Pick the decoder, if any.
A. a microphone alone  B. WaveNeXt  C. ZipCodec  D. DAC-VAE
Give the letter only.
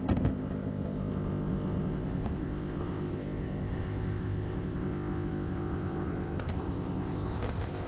C